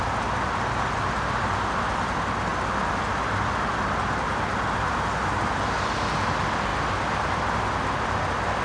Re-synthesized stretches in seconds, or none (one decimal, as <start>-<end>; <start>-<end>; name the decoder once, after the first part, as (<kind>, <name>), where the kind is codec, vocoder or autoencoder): none